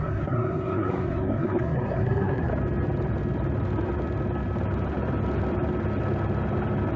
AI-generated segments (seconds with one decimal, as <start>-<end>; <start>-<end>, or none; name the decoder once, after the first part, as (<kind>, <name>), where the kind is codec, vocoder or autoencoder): 0.0-2.5 (codec, SNAC)